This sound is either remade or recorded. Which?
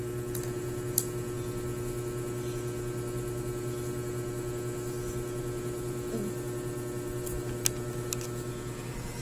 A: recorded